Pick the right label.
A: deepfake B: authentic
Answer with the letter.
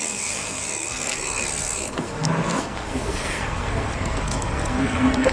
A